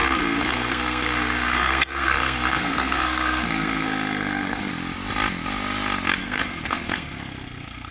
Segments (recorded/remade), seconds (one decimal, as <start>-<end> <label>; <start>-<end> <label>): 0.0-4.7 remade; 4.7-6.2 recorded; 6.2-7.9 remade